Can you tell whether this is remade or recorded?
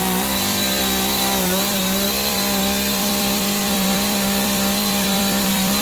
remade